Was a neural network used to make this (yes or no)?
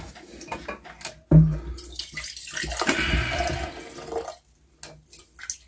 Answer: no